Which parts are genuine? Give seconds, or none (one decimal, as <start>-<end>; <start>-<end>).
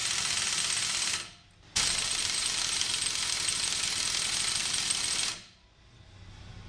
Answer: 2.8-4.6